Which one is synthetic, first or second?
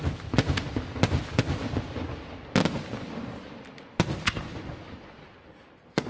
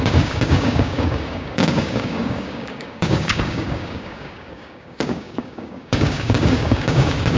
second